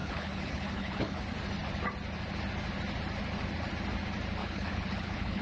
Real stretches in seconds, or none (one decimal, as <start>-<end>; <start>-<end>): 1.2-4.4